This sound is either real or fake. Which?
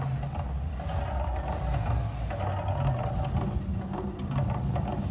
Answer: real